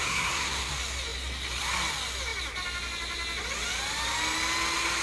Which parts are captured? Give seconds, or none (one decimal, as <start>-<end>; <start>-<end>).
0.7-5.0